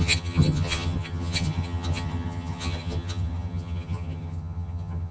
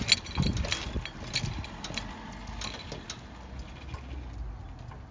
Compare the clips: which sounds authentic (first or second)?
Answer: second